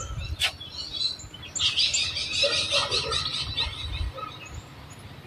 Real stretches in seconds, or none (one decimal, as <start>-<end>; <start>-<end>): 0.0-5.3